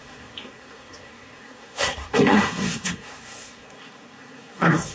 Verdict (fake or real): fake